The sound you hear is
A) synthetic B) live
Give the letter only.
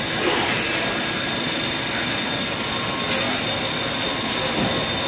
B